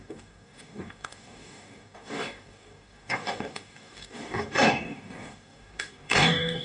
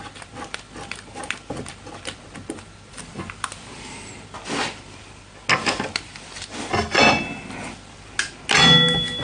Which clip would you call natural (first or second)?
second